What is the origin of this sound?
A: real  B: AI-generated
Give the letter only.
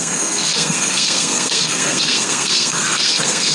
B